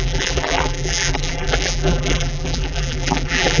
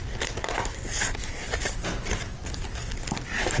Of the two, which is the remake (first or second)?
first